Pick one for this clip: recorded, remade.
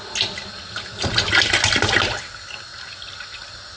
recorded